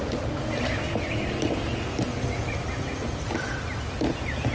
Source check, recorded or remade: recorded